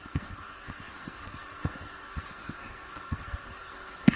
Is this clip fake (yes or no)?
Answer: yes